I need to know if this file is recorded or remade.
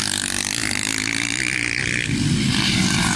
recorded